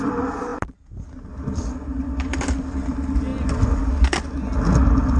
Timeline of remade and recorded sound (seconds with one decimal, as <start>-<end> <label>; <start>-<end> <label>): 0.0-5.2 recorded